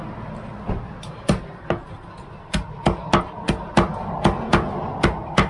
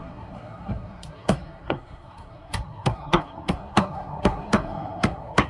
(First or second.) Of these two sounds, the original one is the first